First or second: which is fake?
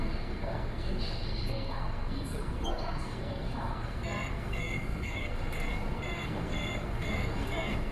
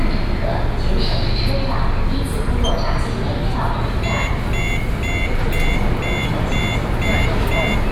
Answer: first